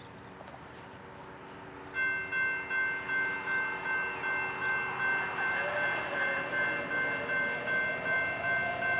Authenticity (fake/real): real